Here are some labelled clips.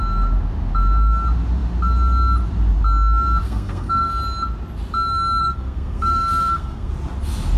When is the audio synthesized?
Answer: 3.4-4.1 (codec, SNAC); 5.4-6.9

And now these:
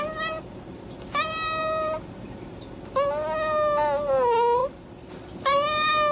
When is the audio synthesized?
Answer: 1.6-2.6 (vocoder, BigVGAN v2); 4.6-5.1

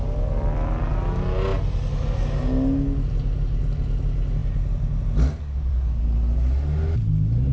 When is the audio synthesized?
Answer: none

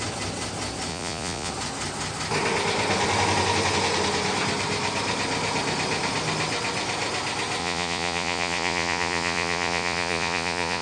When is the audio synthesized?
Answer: 0.9-1.5 (vocoder, Vocos); 7.6-10.8

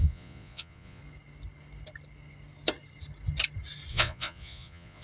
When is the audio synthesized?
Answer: 0.0-1.0 (vocoder, Vocos); 3.9-5.0